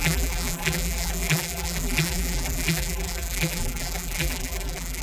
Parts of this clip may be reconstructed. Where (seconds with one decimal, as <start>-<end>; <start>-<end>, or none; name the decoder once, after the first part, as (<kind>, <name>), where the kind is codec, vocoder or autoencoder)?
0.0-5.0 (vocoder, BigVGAN v2)